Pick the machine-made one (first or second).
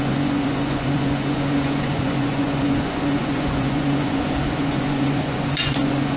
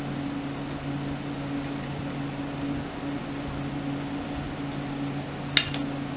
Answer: first